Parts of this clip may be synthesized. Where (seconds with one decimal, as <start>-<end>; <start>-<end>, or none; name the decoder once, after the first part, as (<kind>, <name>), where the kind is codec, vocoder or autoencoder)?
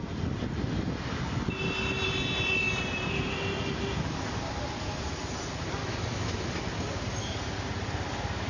5.8-6.5 (autoencoder, DAC-VAE)